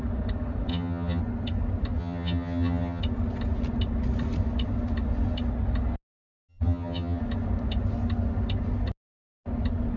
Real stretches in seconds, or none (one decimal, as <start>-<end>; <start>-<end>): 0.0-0.7; 1.2-2.0; 3.0-6.5; 7.2-10.0